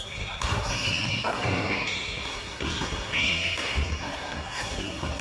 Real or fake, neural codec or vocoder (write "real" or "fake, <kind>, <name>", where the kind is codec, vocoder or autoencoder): fake, codec, SNAC